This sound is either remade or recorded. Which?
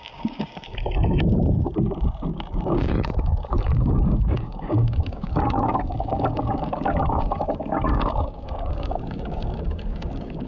remade